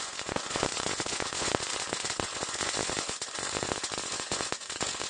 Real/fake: fake